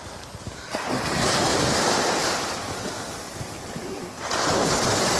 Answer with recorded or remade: recorded